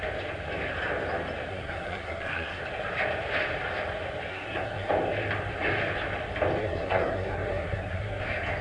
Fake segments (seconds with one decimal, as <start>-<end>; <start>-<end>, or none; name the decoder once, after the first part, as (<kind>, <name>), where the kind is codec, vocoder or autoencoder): 1.5-2.6 (codec, SNAC); 4.3-4.9; 6.6-8.2